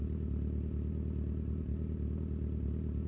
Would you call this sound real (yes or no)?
yes